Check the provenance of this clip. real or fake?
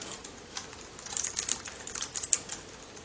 real